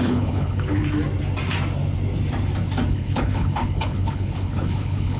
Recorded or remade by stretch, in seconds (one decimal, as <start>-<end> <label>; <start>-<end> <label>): 0.0-0.8 remade; 0.8-2.9 recorded; 2.9-5.2 remade